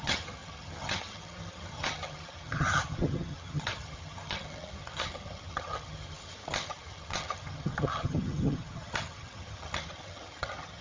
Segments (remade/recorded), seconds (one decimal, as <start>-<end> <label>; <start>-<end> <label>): 0.0-10.8 remade